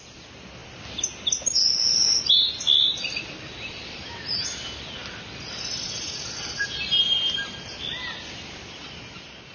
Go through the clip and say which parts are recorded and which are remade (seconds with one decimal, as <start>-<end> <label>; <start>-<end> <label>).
0.0-9.5 recorded